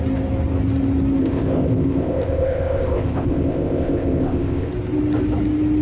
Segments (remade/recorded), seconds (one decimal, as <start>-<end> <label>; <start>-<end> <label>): 0.0-1.2 recorded; 1.2-4.7 remade; 4.7-5.8 recorded